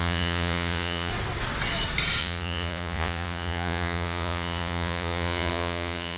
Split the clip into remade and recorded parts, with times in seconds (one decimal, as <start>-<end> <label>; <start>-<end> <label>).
0.0-1.1 remade; 1.1-2.2 recorded; 2.2-6.2 remade